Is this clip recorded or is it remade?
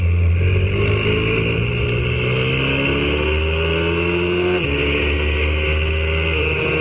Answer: recorded